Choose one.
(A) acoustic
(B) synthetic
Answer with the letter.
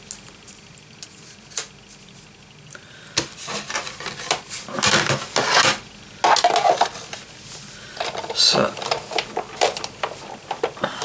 A